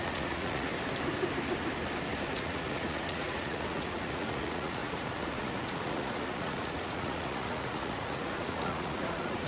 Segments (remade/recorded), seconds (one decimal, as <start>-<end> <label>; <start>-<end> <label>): 0.0-0.7 remade; 0.7-2.3 recorded; 2.3-9.5 remade